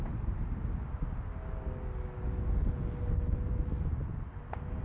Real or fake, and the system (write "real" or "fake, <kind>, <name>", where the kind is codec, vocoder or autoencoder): real